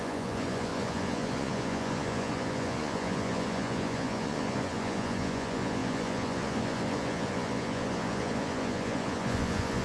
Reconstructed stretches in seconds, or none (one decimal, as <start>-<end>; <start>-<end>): 0.0-9.8